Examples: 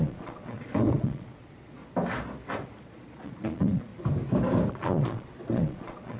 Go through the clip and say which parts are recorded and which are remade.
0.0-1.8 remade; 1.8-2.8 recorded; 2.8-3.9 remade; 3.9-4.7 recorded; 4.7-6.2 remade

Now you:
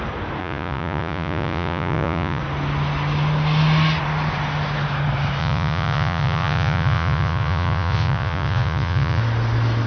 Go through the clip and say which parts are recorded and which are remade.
0.0-0.4 recorded; 0.4-2.4 remade; 2.4-5.4 recorded; 5.4-9.2 remade; 9.2-9.9 recorded

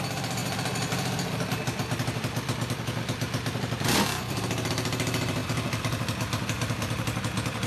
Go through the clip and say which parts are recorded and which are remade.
0.0-7.7 remade